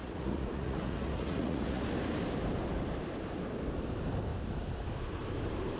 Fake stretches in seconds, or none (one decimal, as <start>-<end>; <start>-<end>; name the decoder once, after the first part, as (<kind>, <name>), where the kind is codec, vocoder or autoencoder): 0.0-1.8 (vocoder, Vocos)